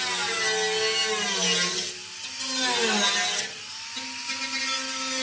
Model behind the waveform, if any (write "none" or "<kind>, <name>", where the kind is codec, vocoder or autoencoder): none